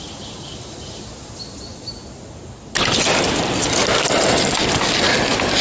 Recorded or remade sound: recorded